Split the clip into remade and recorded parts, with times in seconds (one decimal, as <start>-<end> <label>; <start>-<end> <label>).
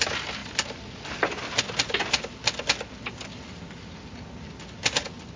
0.0-5.4 recorded